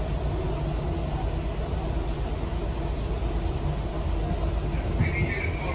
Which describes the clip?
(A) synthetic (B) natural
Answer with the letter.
B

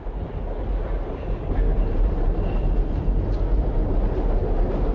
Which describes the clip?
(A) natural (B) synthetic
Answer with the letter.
A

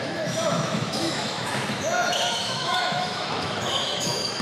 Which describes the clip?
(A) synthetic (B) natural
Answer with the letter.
A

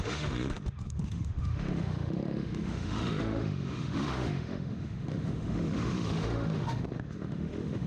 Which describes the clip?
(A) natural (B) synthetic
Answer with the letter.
B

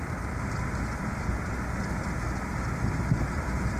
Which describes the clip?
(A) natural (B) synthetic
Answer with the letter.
A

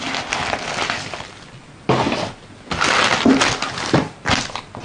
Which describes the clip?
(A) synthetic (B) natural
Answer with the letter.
B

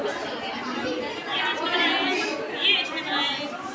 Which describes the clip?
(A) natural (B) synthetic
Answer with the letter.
A